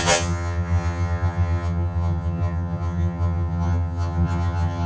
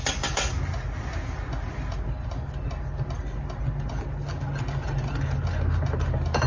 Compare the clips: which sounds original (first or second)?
second